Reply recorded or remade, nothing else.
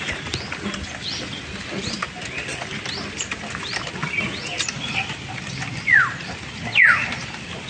recorded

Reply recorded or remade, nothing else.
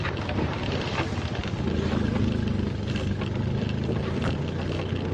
recorded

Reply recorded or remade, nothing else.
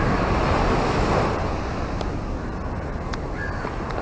recorded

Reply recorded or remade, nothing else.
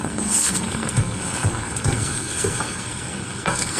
remade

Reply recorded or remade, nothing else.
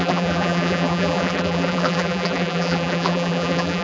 remade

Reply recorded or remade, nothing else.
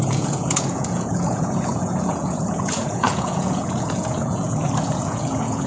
remade